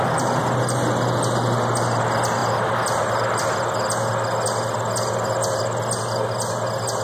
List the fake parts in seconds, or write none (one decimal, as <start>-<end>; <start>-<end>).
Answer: none